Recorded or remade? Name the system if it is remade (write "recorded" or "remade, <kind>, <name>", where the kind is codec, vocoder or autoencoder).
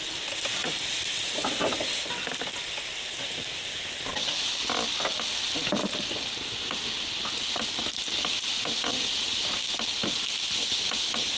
recorded